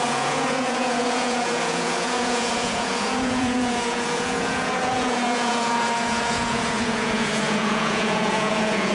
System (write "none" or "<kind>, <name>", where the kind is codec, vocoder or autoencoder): vocoder, Vocos